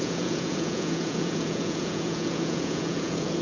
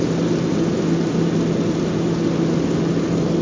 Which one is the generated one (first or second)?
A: first